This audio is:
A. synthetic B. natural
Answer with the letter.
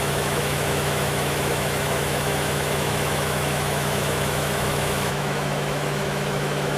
A